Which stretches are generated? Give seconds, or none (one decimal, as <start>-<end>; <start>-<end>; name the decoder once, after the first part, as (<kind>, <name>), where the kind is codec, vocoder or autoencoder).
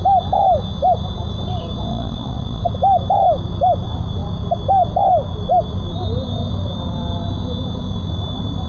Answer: 1.9-2.6 (vocoder, WaveNeXt)